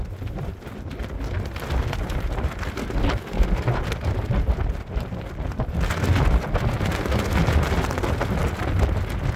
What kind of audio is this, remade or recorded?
recorded